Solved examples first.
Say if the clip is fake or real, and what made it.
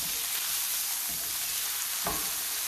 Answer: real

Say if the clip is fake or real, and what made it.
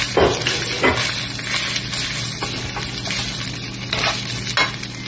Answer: real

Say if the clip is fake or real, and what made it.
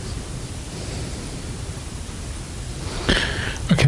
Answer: fake, vocoder, BigVGAN v2